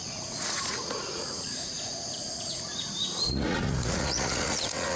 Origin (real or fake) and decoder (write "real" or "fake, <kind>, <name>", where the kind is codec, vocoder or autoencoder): fake, vocoder, Vocos